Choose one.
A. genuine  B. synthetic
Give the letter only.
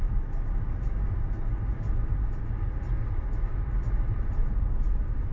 A